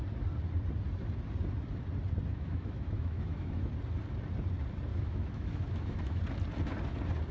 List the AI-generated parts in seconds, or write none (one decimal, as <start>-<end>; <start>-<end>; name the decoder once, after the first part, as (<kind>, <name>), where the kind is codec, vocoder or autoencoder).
2.3-3.6 (autoencoder, DAC-VAE); 4.9-6.2